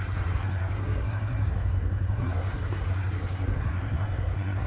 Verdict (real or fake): fake